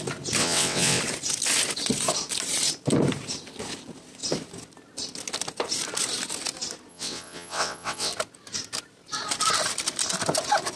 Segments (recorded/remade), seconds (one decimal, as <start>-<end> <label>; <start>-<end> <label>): 0.0-0.4 recorded; 0.4-1.0 remade; 1.0-6.9 recorded; 6.9-8.1 remade; 8.1-10.8 recorded